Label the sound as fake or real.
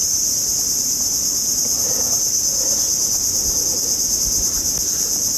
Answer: real